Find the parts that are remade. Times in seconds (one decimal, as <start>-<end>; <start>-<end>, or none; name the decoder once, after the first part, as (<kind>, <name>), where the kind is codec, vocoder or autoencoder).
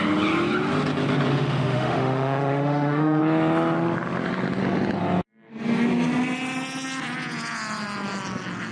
1.3-3.2 (autoencoder, DAC-VAE)